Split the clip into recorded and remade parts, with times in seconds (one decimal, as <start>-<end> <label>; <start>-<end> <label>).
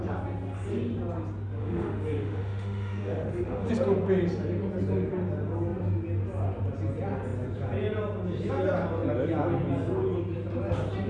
0.0-1.6 recorded; 1.6-3.7 remade; 3.7-11.1 recorded